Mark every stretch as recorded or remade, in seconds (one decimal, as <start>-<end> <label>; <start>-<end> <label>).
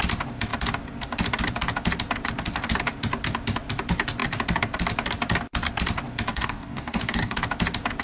0.0-6.3 recorded; 6.3-7.4 remade; 7.4-8.0 recorded